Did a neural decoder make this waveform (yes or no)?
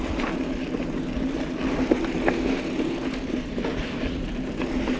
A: no